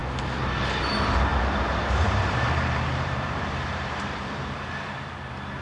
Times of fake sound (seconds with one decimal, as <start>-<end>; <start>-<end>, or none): 1.3-4.7